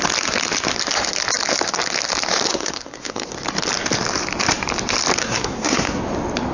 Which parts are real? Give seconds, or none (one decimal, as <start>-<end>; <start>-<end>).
0.0-2.5; 3.3-5.2; 6.0-6.5

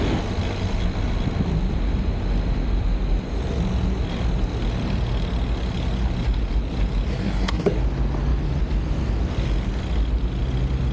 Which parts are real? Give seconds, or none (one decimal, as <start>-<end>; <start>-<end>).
0.0-7.1; 7.8-10.9

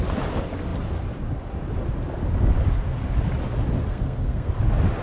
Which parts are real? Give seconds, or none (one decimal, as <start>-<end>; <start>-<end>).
0.0-3.9; 4.5-5.0

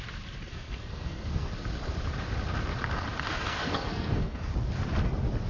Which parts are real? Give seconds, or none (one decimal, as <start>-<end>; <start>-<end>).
0.0-0.5; 1.5-3.3; 4.5-5.5

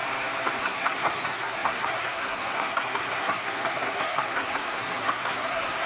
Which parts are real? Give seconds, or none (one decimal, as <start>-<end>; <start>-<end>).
0.0-0.6

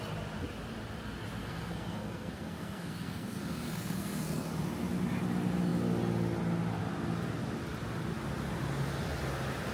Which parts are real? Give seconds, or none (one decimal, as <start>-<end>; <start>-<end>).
0.0-1.4; 4.5-9.7

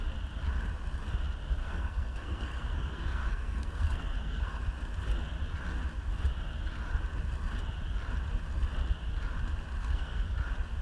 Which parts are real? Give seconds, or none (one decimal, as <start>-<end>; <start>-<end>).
0.0-1.6; 4.6-9.8; 10.3-10.8